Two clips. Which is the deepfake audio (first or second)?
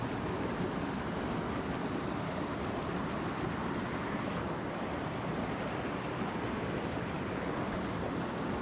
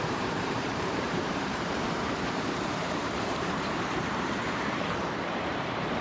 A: second